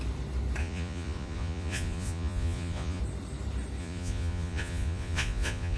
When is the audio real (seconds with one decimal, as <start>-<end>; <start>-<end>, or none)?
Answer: 0.0-0.6; 3.0-3.8